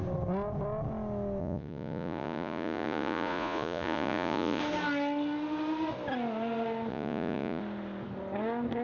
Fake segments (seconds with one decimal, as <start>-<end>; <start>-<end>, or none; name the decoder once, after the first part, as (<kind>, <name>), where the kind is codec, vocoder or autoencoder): 1.4-4.6 (vocoder, Vocos); 6.9-7.6